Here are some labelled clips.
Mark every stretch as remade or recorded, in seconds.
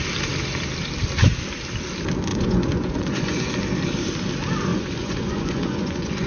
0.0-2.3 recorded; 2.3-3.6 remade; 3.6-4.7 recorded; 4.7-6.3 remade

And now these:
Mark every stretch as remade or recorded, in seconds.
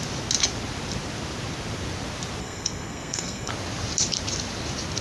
0.0-2.4 recorded; 2.4-3.5 remade; 3.5-5.0 recorded